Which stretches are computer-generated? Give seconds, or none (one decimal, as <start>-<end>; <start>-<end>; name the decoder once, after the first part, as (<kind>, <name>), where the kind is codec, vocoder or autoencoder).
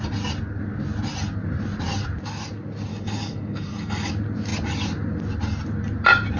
2.9-4.1 (codec, DAC)